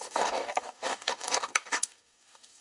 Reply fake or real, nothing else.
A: fake